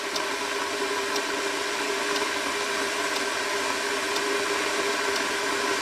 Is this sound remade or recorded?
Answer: recorded